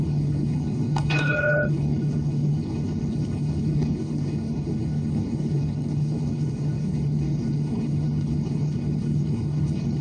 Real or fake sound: fake